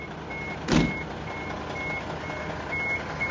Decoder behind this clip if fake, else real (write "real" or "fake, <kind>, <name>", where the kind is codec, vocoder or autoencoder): real